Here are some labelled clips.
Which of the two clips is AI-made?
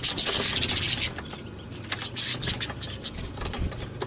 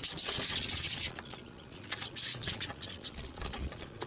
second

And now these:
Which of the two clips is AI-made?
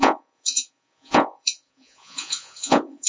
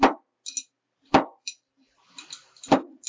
first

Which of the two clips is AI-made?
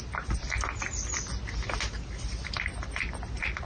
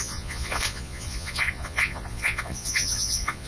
second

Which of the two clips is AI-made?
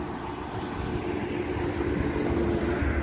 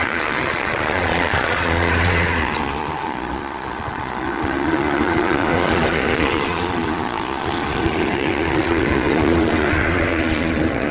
second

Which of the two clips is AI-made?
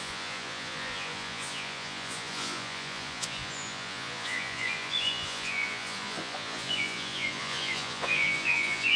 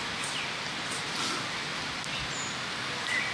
first